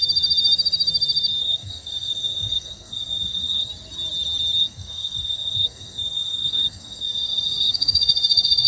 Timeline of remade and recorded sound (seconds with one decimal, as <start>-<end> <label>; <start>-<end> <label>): 0.0-1.4 recorded; 1.4-3.7 remade; 3.7-4.6 recorded; 4.6-8.7 remade